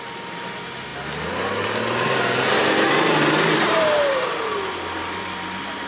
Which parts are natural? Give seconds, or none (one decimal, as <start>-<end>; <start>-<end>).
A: 0.0-5.9